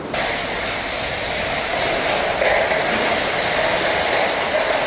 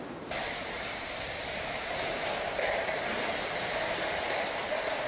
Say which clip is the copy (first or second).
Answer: second